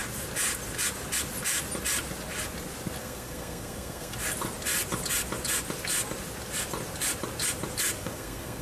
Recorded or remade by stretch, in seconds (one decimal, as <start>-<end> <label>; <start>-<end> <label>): 0.0-3.0 recorded; 3.0-4.1 remade; 4.1-8.0 recorded; 8.0-8.6 remade